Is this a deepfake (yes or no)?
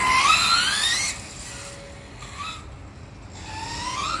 no